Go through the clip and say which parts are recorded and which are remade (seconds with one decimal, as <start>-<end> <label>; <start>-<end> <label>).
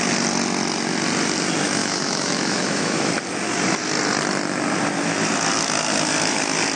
0.0-1.8 recorded; 1.8-3.1 remade; 3.1-6.8 recorded